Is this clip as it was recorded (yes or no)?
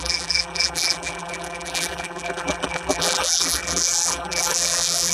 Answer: no